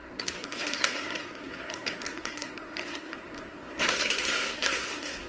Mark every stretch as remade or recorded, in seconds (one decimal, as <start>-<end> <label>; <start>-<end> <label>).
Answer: 0.0-5.3 remade